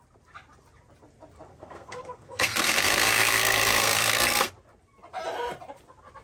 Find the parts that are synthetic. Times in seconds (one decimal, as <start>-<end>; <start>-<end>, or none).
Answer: 1.5-4.5